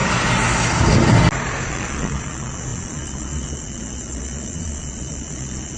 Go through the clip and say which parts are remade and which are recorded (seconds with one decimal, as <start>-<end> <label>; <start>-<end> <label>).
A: 0.0-1.7 recorded; 1.7-5.8 remade